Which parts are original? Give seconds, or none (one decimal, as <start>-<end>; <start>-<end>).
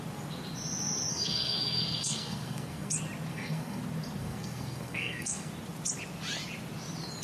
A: 0.0-1.1; 2.9-3.3; 3.8-4.2; 5.5-7.2